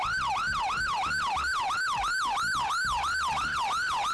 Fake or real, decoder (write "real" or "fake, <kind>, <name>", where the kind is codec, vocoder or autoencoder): real